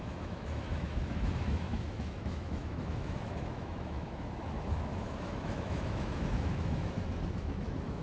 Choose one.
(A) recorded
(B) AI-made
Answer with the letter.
B